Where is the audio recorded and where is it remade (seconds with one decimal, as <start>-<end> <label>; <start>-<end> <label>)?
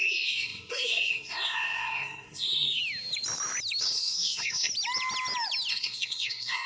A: 0.0-2.8 remade; 2.8-3.8 recorded; 3.8-4.7 remade; 4.7-5.7 recorded; 5.7-6.7 remade